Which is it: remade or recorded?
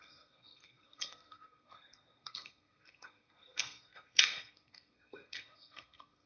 remade